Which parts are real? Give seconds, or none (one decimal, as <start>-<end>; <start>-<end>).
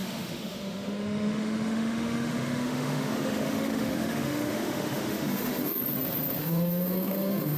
5.8-6.4